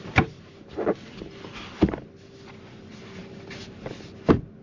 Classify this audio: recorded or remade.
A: recorded